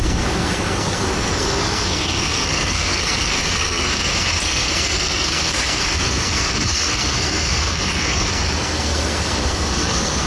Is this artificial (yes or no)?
yes